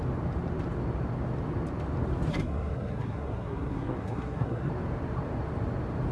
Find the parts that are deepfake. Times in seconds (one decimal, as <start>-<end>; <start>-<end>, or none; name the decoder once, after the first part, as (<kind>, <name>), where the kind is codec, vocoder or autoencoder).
2.3-4.7 (codec, SNAC)